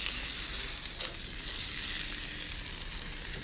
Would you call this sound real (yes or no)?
yes